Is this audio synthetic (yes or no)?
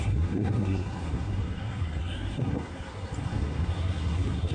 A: yes